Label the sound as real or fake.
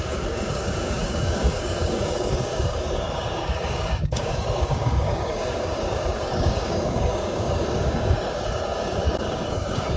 fake